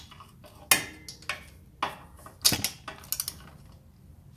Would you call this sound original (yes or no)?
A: yes